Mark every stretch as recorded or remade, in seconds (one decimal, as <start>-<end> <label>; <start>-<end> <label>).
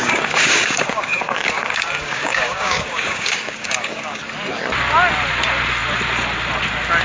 0.0-4.2 remade; 4.2-7.0 recorded